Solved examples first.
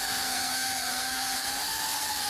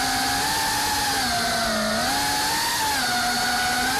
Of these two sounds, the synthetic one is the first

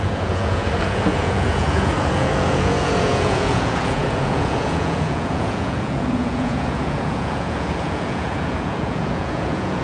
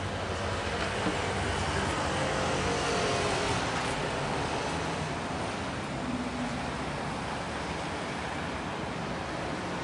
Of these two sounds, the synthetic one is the first